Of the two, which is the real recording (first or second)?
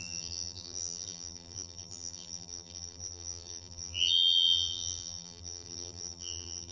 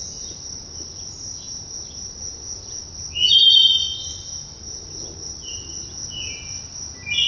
second